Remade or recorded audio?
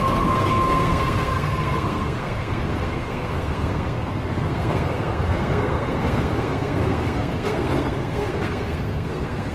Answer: remade